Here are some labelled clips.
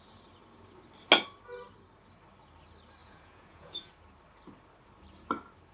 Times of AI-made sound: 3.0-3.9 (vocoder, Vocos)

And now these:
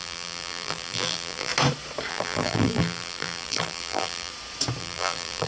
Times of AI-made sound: 0.0-1.5 (vocoder, BigVGAN v2); 2.1-4.3; 4.8-5.5

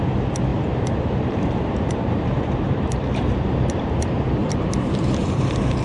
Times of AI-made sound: 0.5-3.9 (vocoder, BigVGAN v2); 4.4-5.8

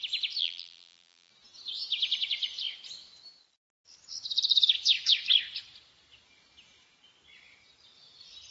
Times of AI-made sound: 0.4-1.3 (vocoder, BigVGAN v2)

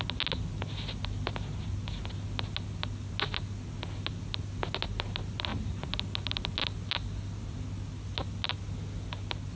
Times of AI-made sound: none